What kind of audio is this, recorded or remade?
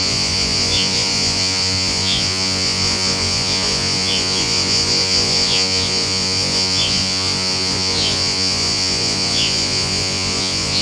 remade